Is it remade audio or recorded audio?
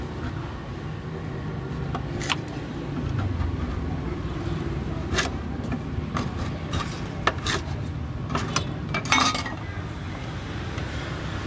recorded